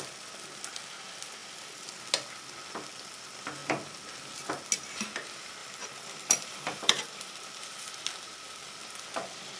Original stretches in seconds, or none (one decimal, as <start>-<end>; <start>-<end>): 0.0-1.4; 2.0-5.6; 7.3-9.6